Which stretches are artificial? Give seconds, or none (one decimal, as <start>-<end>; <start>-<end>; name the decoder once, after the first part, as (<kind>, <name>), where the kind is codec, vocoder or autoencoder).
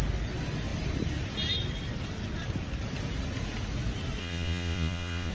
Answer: 4.2-5.3 (vocoder, Vocos)